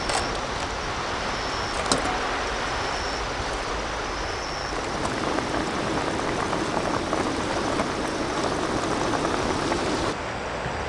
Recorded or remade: recorded